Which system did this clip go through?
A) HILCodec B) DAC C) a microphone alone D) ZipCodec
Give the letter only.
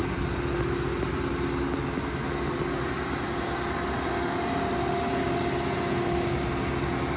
C